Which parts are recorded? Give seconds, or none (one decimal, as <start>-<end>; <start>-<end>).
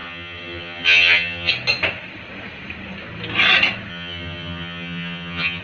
1.5-3.9